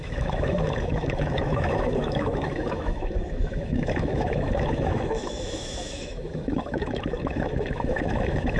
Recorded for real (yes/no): no